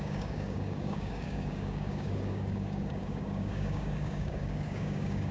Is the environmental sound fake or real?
fake